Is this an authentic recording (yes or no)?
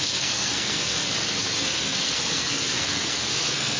no